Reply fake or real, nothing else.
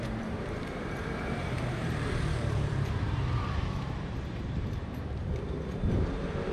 fake